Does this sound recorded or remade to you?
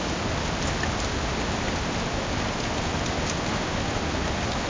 recorded